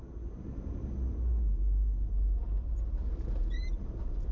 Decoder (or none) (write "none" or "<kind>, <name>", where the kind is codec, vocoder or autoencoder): vocoder, BigVGAN v2